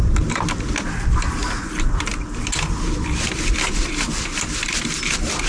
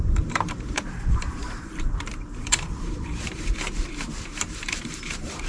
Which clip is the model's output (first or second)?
second